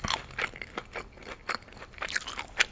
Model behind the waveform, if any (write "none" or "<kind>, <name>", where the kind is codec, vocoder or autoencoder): none